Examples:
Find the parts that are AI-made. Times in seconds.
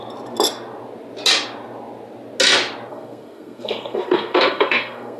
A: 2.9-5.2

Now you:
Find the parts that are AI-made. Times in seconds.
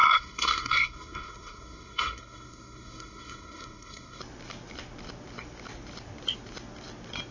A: 0.0-4.2